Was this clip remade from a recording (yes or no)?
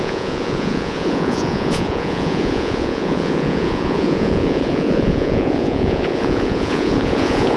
yes